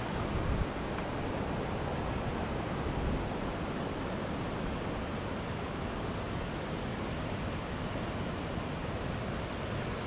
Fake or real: real